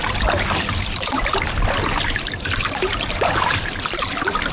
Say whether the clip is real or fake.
real